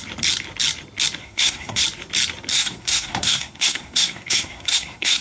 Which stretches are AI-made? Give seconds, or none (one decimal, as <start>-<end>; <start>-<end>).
1.2-1.8; 2.5-5.2